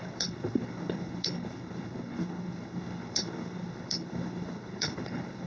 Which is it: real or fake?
fake